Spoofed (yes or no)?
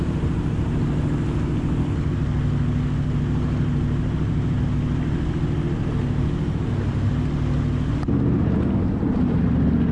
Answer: no